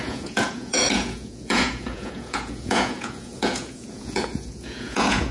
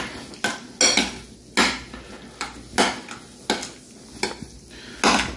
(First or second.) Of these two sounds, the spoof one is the first